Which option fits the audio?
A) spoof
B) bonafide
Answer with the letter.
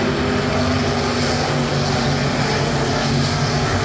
B